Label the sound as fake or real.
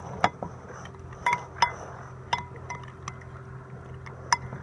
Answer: real